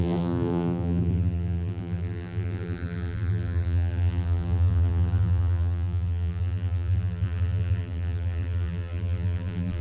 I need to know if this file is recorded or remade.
remade